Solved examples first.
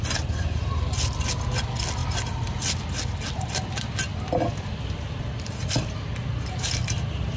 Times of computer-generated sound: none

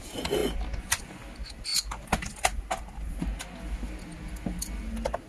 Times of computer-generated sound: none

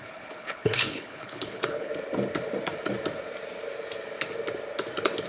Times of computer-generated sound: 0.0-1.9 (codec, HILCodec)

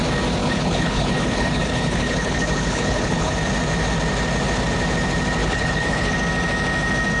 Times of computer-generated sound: 0.4-3.3 (codec, HILCodec); 5.4-6.1

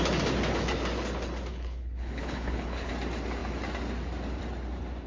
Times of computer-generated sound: 1.5-2.9 (codec, HILCodec)

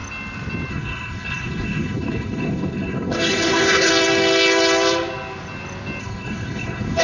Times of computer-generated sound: 0.7-3.9 (codec, HILCodec); 6.0-7.0